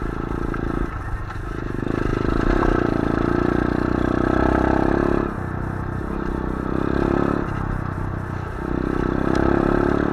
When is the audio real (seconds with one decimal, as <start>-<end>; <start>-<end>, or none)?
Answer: 0.0-10.1